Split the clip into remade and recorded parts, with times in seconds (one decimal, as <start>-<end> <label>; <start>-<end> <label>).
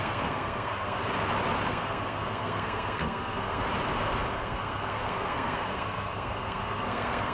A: 0.0-1.0 remade; 1.0-1.7 recorded; 1.7-3.6 remade; 3.6-4.3 recorded; 4.3-7.3 remade